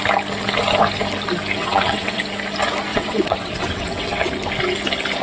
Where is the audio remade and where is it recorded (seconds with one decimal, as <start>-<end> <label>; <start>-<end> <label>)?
0.0-1.6 recorded; 1.6-2.2 remade; 2.2-2.9 recorded; 2.9-4.3 remade; 4.3-5.2 recorded